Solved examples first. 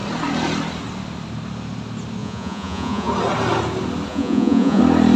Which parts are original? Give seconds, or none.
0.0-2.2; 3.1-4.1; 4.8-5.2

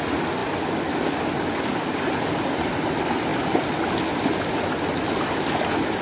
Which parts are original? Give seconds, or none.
0.0-6.0

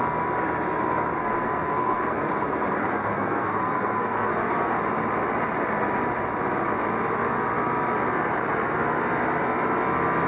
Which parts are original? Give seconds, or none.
0.0-1.2; 2.3-2.8; 4.5-10.3

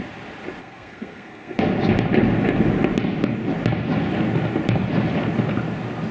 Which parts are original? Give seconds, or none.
0.0-0.6; 1.6-6.1

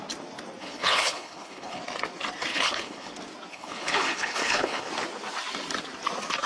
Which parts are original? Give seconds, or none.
0.0-0.6; 1.8-2.5; 3.1-3.5; 4.9-6.5

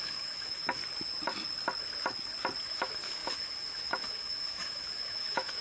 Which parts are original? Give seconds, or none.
0.8-2.6

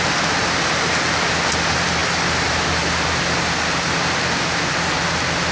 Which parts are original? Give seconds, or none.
0.0-5.5

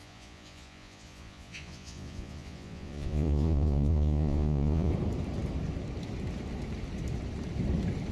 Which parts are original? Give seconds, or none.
4.9-8.1